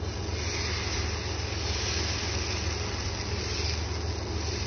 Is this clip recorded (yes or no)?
yes